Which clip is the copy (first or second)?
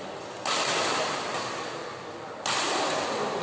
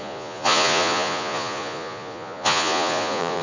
second